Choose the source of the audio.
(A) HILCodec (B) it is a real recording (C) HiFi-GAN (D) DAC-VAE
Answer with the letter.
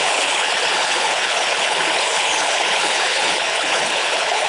A